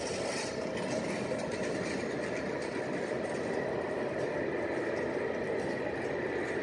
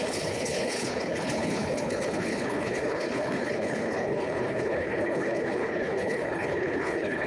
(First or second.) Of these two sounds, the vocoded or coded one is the second